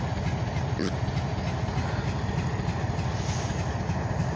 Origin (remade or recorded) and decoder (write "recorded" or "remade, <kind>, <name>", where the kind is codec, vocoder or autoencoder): recorded